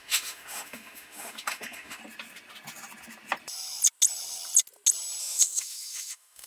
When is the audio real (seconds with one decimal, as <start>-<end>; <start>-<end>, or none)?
2.0-5.2